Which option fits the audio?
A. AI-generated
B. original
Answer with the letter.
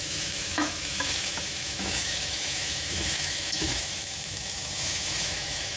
A